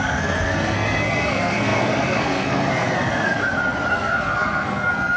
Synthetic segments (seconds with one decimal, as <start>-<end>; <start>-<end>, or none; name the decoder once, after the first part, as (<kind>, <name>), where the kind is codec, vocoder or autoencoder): 0.0-3.4 (codec, SNAC); 3.9-5.2